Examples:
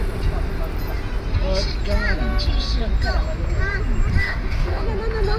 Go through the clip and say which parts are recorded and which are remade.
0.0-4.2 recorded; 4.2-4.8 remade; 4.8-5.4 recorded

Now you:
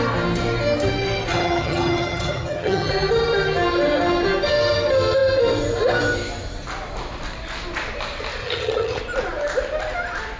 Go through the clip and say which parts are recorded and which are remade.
0.0-1.3 recorded; 1.3-2.9 remade; 2.9-8.4 recorded; 8.4-9.0 remade; 9.0-10.4 recorded

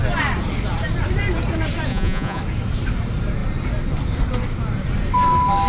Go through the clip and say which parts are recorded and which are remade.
0.0-1.9 recorded; 1.9-2.4 remade; 2.4-5.7 recorded

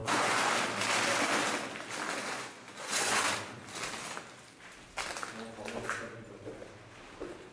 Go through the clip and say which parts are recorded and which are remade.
0.0-0.5 remade; 0.5-2.2 recorded; 2.2-3.2 remade; 3.2-7.5 recorded

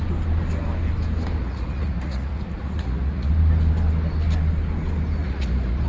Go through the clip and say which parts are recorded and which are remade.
0.0-1.4 recorded; 1.4-3.3 remade; 3.3-5.2 recorded; 5.2-5.9 remade

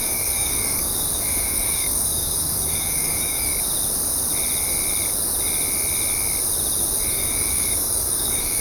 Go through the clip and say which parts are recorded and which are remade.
0.0-3.5 remade; 3.5-7.1 recorded; 7.1-8.6 remade

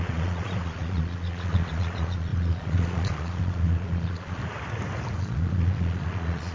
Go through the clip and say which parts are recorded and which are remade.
0.0-4.4 remade; 4.4-5.2 recorded; 5.2-6.5 remade

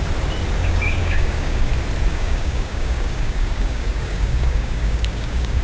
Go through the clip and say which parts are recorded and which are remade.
0.0-0.6 recorded; 0.6-1.7 remade; 1.7-2.1 recorded; 2.1-5.6 remade